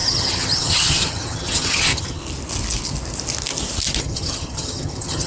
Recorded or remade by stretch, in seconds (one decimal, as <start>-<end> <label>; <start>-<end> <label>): 0.0-2.2 remade; 2.2-4.0 recorded; 4.0-5.3 remade